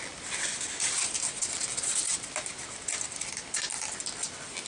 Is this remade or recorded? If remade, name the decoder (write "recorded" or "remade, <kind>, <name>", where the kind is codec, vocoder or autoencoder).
recorded